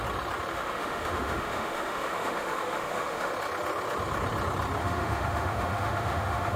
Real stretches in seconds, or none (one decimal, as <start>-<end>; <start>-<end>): 0.0-0.5; 3.3-4.8